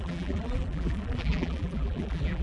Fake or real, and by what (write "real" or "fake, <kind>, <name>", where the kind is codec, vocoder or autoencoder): fake, vocoder, BigVGAN v2